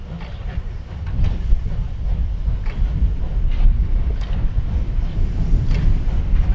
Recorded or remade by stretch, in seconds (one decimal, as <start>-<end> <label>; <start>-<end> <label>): 0.0-3.5 recorded; 3.5-4.4 remade; 4.4-6.5 recorded